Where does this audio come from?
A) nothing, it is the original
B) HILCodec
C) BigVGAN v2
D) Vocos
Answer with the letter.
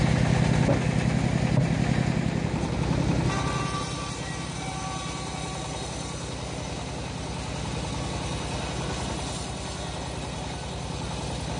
A